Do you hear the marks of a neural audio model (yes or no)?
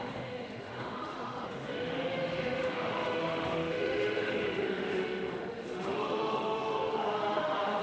yes